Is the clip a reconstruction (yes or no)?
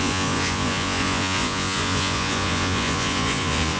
yes